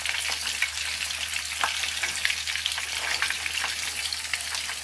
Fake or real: real